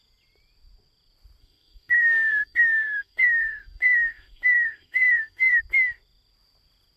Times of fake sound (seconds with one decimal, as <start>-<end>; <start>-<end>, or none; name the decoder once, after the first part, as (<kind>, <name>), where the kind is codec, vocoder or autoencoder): 1.4-5.6 (codec, SNAC)